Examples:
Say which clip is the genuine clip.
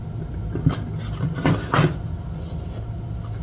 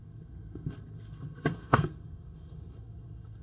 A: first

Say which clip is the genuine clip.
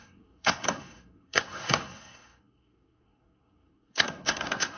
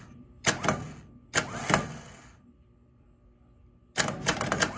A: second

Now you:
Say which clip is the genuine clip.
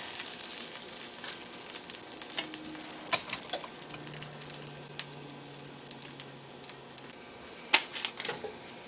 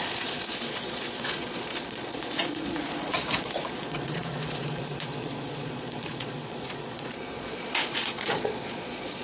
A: first